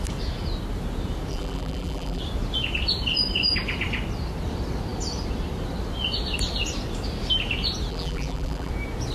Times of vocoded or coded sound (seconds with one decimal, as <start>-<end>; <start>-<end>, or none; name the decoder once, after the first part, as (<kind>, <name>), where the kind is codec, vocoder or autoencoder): 1.3-2.2 (vocoder, BigVGAN v2); 7.9-8.7